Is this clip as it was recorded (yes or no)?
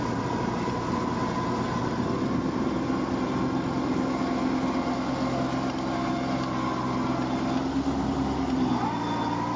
yes